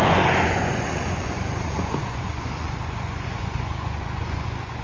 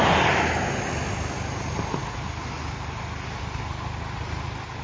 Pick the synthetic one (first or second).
first